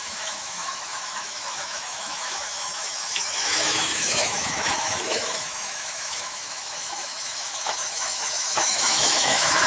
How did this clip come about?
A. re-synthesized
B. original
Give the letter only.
A